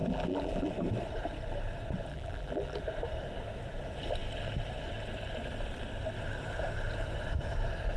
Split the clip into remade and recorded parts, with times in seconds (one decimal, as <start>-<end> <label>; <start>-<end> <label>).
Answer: 0.0-0.7 remade; 0.7-2.1 recorded; 2.1-2.8 remade; 2.8-8.0 recorded